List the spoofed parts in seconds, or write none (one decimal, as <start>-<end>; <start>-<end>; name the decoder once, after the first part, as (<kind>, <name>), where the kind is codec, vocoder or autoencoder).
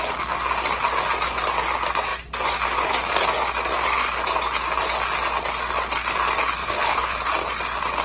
6.6-7.2 (codec, HILCodec)